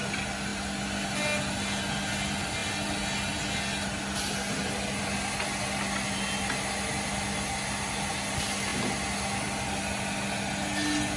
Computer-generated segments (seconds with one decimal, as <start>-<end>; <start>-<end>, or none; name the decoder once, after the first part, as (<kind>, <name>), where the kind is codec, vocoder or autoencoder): none